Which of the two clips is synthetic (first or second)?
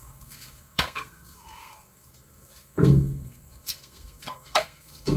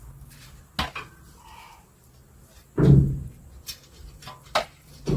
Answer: first